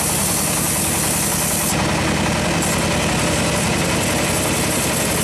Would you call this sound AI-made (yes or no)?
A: no